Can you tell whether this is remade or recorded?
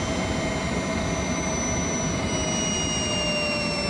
recorded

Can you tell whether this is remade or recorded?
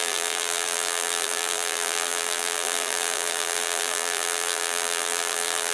remade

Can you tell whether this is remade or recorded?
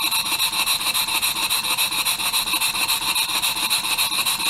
recorded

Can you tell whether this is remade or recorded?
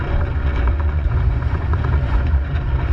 remade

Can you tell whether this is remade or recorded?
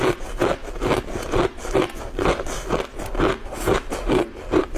recorded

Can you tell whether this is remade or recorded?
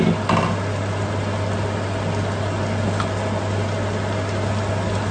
recorded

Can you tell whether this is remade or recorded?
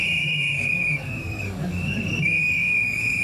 remade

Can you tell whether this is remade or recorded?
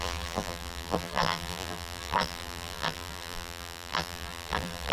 remade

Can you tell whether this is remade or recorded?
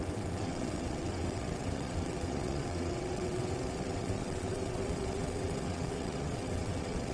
remade